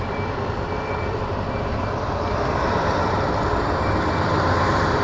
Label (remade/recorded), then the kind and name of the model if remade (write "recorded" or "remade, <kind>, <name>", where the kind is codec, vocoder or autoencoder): remade, vocoder, BigVGAN v2